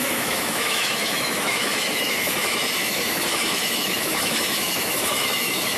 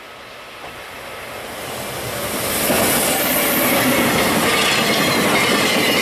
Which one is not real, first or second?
first